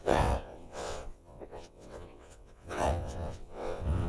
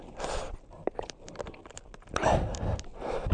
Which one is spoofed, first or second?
first